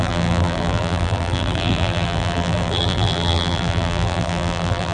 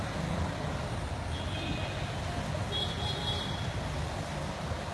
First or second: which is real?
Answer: second